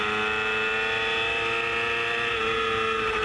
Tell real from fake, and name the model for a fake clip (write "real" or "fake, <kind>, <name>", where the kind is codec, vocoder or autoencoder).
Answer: real